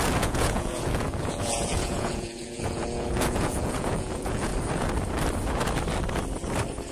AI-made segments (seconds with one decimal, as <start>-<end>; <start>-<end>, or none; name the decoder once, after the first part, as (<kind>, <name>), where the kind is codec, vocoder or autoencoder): 0.0-4.5 (vocoder, Vocos)

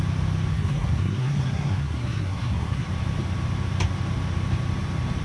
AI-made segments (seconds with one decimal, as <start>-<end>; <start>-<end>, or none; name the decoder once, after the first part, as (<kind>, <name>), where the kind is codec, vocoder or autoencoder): 0.5-2.9 (codec, SNAC)

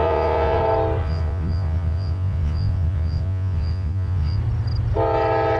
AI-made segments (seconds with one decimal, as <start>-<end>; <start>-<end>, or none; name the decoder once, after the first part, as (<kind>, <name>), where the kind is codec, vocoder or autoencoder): 0.0-0.6 (vocoder, Vocos); 1.0-4.4

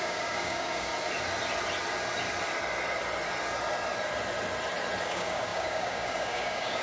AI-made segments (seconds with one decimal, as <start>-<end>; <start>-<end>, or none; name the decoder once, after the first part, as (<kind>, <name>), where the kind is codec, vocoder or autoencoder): 0.0-0.9 (codec, DAC); 5.0-6.8